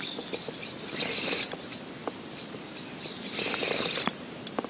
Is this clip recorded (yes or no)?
yes